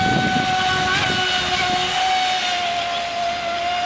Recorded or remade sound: recorded